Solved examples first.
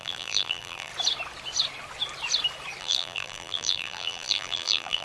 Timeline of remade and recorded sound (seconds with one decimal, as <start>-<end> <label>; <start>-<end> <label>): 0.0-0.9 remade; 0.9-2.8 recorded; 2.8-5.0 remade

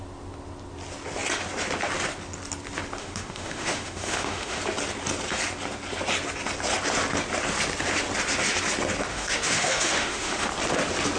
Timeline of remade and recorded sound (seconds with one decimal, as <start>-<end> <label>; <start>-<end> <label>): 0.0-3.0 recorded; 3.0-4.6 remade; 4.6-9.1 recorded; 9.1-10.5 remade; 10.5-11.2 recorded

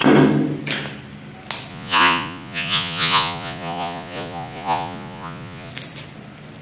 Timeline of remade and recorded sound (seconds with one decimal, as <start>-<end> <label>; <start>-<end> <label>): 0.0-1.7 recorded; 1.7-5.7 remade; 5.7-6.6 recorded